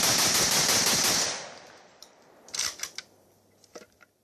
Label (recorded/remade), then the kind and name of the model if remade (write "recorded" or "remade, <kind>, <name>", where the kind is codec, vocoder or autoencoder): recorded